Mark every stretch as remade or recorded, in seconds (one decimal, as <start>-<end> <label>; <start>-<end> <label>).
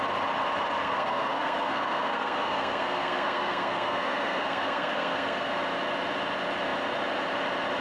0.0-0.8 recorded; 0.8-5.5 remade; 5.5-7.8 recorded